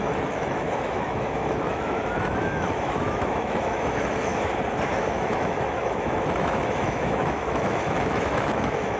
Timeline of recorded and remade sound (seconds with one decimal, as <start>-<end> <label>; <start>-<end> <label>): 0.0-4.3 remade; 4.3-5.1 recorded; 5.1-9.0 remade